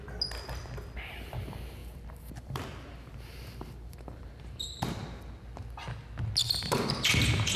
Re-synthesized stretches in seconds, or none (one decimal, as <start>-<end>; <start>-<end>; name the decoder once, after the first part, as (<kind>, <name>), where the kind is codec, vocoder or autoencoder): 1.8-5.2 (vocoder, BigVGAN v2); 6.4-6.9